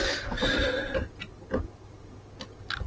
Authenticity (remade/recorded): recorded